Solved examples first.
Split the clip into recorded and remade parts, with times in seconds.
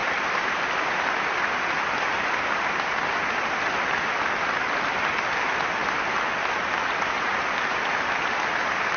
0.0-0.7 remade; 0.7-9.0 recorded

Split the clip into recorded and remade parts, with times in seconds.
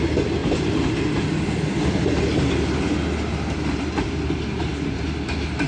0.0-5.7 recorded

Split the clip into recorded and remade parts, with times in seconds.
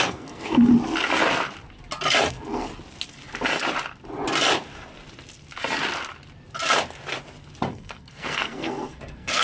0.0-0.7 remade; 0.7-2.3 recorded; 2.3-2.7 remade; 2.7-7.7 recorded; 7.7-9.4 remade